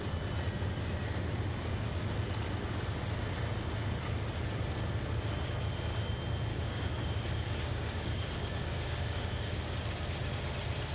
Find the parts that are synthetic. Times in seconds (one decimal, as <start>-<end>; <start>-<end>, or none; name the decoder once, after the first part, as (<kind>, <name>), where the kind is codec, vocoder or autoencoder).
6.5-9.6 (codec, DAC)